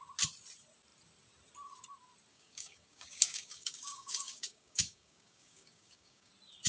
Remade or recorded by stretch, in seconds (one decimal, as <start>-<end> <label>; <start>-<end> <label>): 0.0-2.3 recorded; 2.3-6.3 remade; 6.3-6.7 recorded